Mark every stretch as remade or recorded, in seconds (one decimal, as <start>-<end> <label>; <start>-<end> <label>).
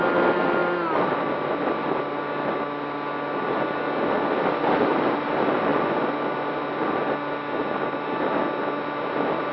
0.0-9.5 recorded